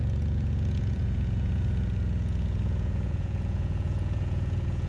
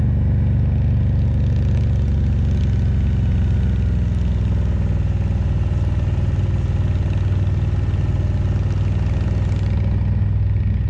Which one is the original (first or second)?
second